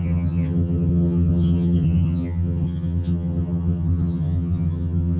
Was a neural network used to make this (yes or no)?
yes